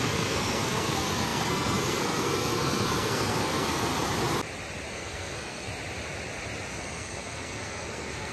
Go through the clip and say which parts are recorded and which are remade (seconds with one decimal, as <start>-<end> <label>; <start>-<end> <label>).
0.0-3.9 remade; 3.9-4.9 recorded; 4.9-5.7 remade; 5.7-6.8 recorded; 6.8-8.3 remade